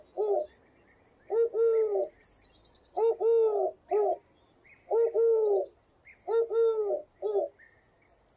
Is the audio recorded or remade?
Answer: recorded